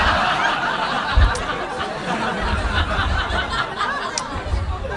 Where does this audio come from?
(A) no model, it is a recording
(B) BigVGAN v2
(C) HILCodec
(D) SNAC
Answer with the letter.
A